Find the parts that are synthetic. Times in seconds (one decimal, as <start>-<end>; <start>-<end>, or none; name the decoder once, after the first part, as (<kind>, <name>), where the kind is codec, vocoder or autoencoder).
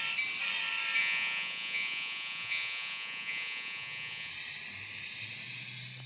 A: 1.0-4.3 (vocoder, Vocos)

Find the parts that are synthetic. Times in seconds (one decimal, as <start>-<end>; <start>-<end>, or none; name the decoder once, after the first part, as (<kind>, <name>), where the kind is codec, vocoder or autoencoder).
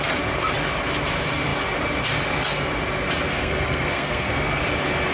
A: 3.3-4.6 (codec, SNAC)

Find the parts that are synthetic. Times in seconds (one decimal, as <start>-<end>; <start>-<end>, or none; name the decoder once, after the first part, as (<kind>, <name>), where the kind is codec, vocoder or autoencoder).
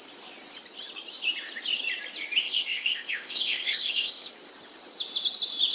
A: 2.4-4.3 (codec, ZipCodec)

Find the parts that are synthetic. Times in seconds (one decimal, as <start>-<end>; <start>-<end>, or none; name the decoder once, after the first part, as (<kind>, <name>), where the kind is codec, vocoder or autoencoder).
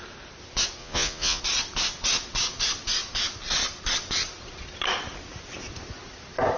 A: 0.8-1.4 (vocoder, Vocos)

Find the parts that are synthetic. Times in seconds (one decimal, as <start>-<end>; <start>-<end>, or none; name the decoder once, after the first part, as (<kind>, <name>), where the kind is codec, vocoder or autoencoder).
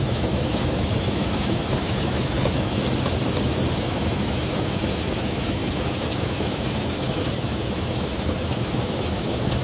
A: 0.0-2.8 (autoencoder, DAC-VAE); 3.7-9.6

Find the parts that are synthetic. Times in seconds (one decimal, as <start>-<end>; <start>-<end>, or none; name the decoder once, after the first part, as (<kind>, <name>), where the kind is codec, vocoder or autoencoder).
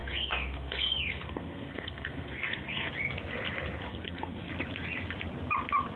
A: 0.0-2.9 (codec, SNAC); 3.9-4.5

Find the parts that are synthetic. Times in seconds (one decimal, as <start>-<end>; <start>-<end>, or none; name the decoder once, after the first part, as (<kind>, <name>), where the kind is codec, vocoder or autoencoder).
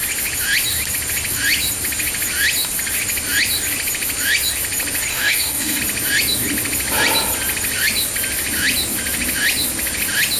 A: 5.1-5.8 (codec, DAC)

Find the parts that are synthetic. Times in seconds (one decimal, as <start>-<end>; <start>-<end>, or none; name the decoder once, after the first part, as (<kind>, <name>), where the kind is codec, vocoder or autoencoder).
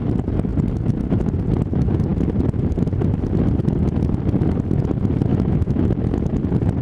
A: 5.3-5.9 (autoencoder, DAC-VAE)